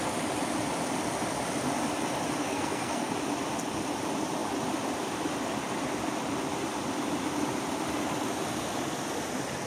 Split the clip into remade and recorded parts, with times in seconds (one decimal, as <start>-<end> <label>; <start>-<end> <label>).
0.0-2.4 recorded; 2.4-3.1 remade; 3.1-9.7 recorded